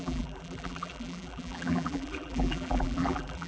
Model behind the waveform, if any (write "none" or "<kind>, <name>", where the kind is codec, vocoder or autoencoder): vocoder, BigVGAN v2